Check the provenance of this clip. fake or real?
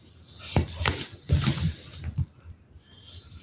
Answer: real